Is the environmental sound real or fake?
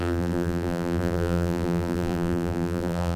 fake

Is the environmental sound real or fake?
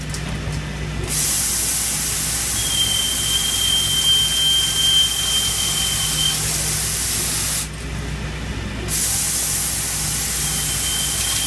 real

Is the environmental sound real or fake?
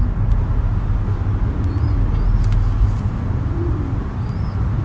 real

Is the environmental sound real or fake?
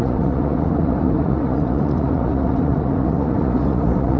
fake